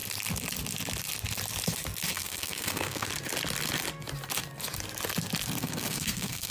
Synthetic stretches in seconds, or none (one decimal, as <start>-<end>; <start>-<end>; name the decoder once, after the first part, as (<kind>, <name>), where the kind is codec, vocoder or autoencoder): 2.1-3.1 (codec, SNAC); 5.6-6.5